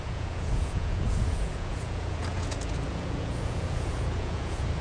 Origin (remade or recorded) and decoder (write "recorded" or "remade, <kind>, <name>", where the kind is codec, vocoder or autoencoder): remade, vocoder, Vocos